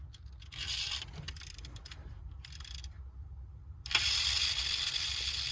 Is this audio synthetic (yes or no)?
no